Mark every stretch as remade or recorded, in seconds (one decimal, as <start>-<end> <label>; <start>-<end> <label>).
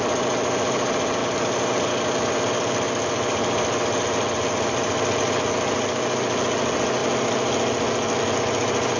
0.0-9.0 recorded